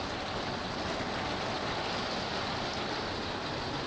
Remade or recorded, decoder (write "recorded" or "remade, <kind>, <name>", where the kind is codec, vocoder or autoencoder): recorded